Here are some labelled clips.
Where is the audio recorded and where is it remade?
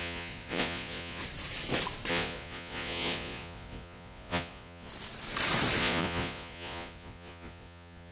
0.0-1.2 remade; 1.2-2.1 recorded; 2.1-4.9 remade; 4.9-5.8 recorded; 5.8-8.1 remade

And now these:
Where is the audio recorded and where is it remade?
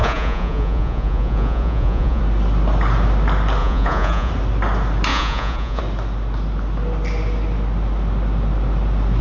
0.0-2.2 remade; 2.2-3.6 recorded; 3.6-4.3 remade; 4.3-5.1 recorded; 5.1-5.8 remade; 5.8-9.2 recorded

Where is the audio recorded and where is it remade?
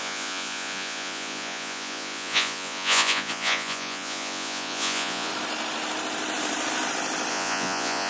0.0-5.3 remade; 5.3-7.3 recorded; 7.3-8.1 remade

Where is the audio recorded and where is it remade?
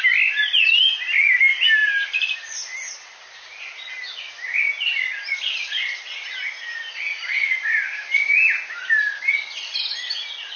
0.0-10.6 recorded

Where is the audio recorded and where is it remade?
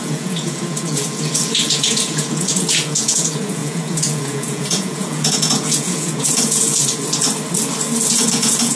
0.0-6.8 remade; 6.8-8.1 recorded; 8.1-8.8 remade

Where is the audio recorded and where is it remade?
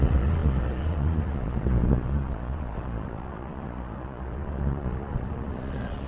0.0-6.1 remade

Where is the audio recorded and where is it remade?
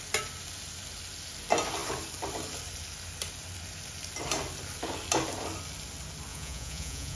0.0-6.3 recorded; 6.3-7.2 remade